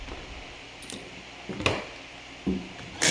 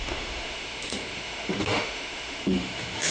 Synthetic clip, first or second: second